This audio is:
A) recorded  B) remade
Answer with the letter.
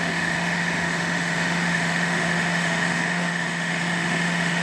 B